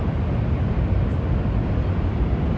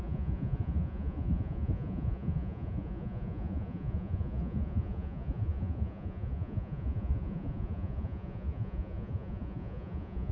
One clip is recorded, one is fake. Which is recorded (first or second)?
first